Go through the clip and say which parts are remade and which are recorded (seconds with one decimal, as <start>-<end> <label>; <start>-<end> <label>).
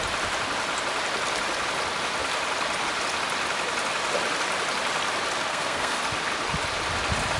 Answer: 0.0-5.5 recorded; 5.5-6.0 remade; 6.0-7.4 recorded